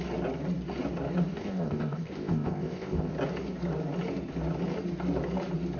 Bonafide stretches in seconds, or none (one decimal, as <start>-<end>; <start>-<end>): 0.0-1.4; 3.1-5.8